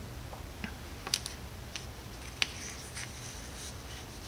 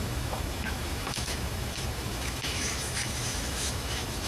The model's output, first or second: second